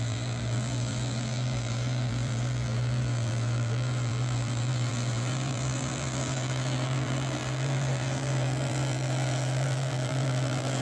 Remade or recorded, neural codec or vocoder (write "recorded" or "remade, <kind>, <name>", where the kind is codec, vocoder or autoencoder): remade, vocoder, BigVGAN v2